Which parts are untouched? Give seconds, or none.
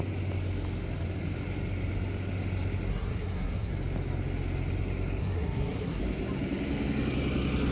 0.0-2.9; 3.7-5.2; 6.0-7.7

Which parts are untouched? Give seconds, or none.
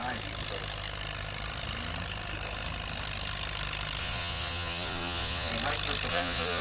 0.0-4.0; 5.5-6.1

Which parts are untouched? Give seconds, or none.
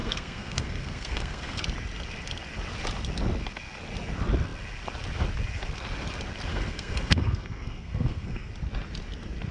1.6-6.5; 8.5-9.5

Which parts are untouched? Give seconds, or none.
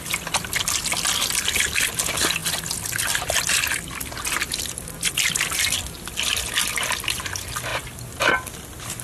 0.0-9.0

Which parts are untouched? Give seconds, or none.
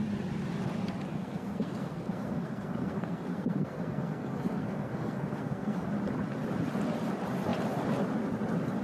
0.0-1.1; 5.9-8.8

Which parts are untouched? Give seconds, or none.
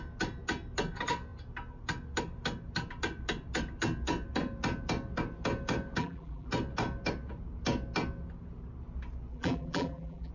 0.0-6.0; 6.5-9.3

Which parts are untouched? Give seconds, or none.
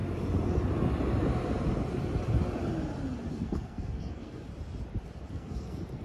0.0-3.3; 4.5-5.3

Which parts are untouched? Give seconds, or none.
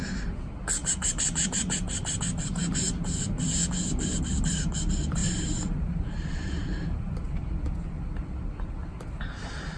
0.0-0.8; 2.2-5.2; 7.4-9.8